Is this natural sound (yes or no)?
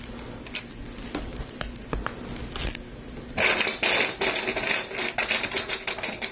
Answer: yes